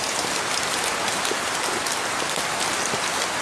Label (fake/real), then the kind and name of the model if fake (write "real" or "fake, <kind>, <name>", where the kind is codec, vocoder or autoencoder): real